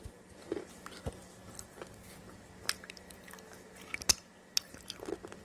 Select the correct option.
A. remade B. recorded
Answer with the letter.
B